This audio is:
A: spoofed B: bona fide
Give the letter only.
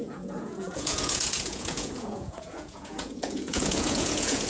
A